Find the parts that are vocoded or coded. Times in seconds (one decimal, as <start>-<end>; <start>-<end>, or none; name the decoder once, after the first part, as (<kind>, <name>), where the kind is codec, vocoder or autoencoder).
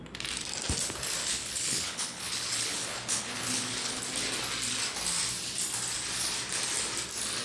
1.2-4.0 (codec, HILCodec)